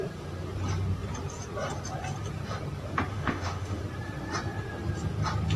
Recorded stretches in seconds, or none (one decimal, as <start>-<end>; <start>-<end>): 0.0-3.1; 3.8-5.6